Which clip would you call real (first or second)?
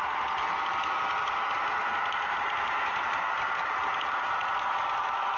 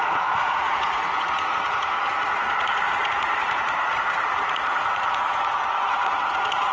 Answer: first